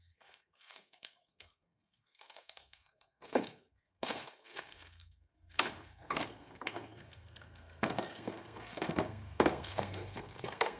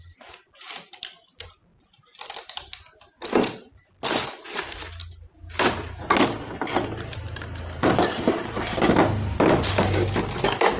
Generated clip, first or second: first